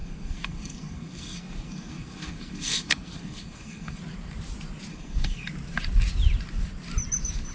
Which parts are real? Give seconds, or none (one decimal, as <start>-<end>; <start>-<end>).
4.0-4.9; 5.5-7.5